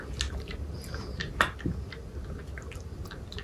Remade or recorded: recorded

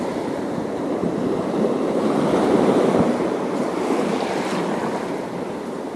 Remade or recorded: remade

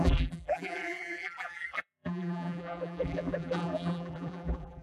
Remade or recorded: remade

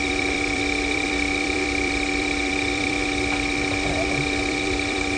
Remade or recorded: remade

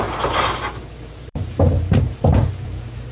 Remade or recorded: remade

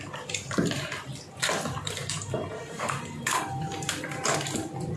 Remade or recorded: remade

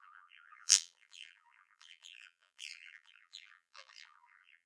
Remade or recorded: remade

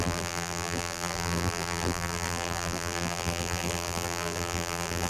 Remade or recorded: remade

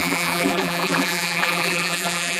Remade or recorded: remade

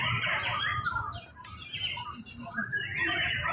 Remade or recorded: remade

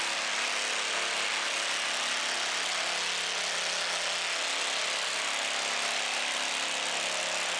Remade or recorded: recorded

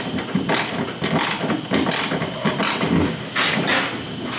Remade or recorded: recorded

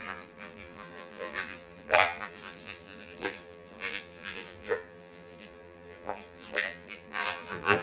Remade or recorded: remade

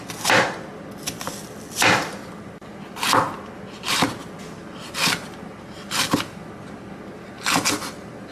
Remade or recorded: recorded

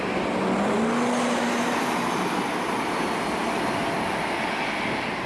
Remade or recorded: recorded